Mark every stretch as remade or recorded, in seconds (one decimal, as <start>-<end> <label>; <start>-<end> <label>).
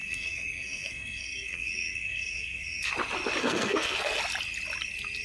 0.0-2.9 remade; 2.9-3.4 recorded; 3.4-4.2 remade; 4.2-5.2 recorded